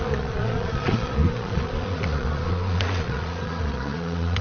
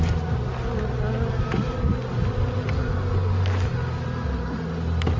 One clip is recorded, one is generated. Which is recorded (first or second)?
second